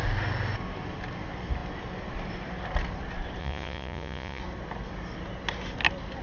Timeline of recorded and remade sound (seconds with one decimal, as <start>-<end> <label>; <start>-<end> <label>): 0.0-3.4 recorded; 3.4-4.4 remade; 4.4-6.2 recorded